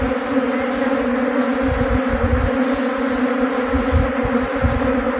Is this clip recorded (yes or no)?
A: yes